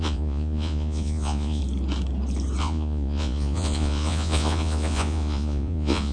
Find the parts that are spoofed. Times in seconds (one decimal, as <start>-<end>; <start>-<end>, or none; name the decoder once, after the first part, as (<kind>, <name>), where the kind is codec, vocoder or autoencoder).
0.0-1.6 (vocoder, Vocos); 2.6-6.1